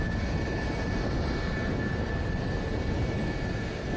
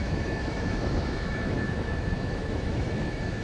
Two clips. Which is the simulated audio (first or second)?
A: second